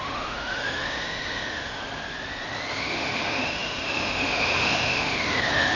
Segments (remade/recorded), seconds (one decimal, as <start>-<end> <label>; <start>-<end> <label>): 0.0-1.8 remade; 1.8-2.8 recorded; 2.8-5.8 remade

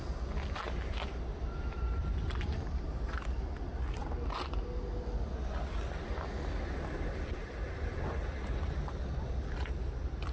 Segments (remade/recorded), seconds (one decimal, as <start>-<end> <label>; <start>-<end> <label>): 0.0-10.3 recorded

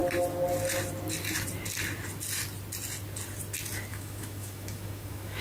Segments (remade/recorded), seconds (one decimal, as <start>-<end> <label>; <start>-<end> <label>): 0.0-3.9 recorded; 3.9-5.4 remade